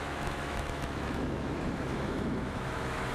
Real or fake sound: fake